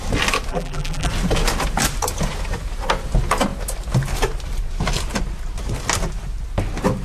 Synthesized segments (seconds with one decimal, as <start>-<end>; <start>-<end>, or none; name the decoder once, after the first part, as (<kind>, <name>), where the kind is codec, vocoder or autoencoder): 0.5-1.1 (vocoder, BigVGAN v2)